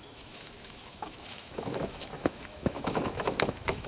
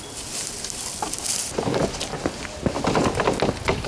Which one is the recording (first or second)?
second